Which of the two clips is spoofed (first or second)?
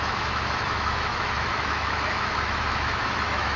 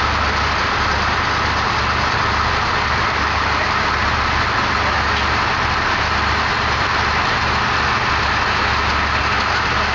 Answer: first